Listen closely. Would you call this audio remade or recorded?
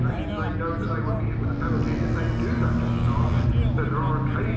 recorded